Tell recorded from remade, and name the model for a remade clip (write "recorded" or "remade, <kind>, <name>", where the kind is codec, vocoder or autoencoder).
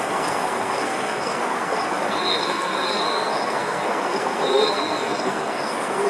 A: remade, codec, SNAC